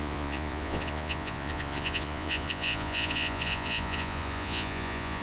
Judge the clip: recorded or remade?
remade